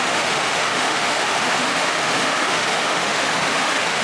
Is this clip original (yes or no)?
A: no